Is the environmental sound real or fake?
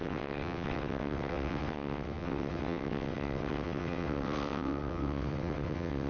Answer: fake